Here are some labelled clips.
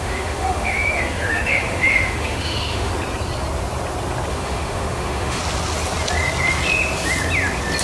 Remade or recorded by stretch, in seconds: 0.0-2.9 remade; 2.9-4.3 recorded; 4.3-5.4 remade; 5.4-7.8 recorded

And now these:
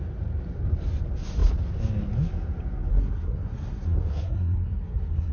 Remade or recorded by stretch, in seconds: 0.0-2.9 recorded; 2.9-5.3 remade

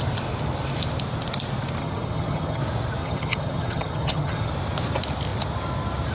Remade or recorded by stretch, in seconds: 0.0-1.8 recorded; 1.8-2.6 remade; 2.6-3.0 recorded; 3.0-4.5 remade; 4.5-6.1 recorded

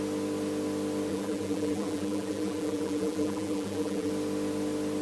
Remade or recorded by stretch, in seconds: 0.0-1.1 recorded; 1.1-4.1 remade; 4.1-5.0 recorded

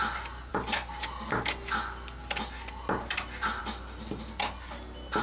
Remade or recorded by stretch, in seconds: 0.0-5.2 recorded